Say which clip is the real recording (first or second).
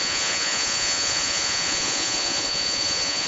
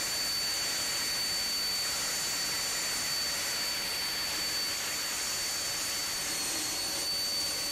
second